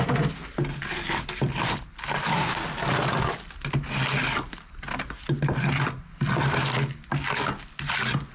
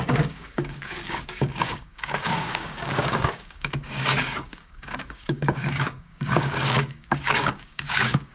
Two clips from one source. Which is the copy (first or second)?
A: second